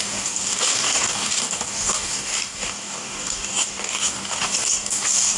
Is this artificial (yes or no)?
yes